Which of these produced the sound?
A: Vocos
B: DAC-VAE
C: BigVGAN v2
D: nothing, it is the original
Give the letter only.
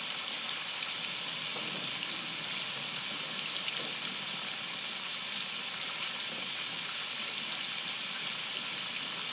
D